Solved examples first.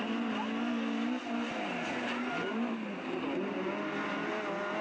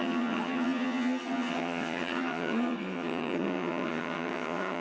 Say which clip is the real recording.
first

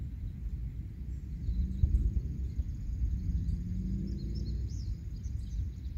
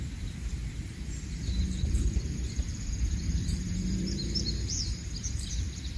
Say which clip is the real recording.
first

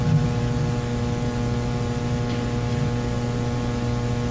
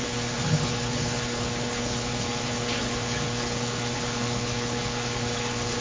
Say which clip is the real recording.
first